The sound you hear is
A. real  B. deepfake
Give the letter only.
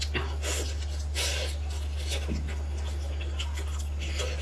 A